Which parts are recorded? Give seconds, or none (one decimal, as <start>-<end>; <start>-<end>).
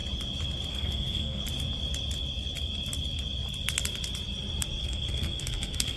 0.0-0.7; 1.4-4.8